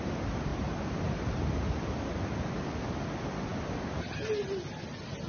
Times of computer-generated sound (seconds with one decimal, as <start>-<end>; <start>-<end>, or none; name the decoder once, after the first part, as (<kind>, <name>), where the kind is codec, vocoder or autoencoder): none